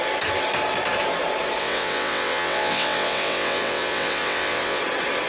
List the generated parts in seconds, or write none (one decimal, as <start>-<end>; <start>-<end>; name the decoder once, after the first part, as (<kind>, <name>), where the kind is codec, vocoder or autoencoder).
1.6-4.8 (vocoder, WaveNeXt)